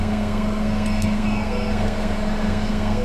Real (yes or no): no